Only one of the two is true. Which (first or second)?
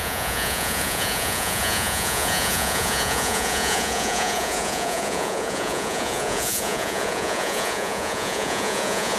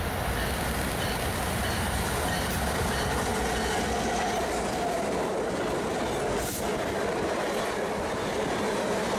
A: second